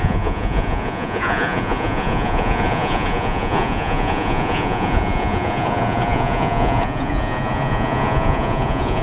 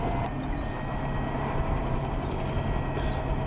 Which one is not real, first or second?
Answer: first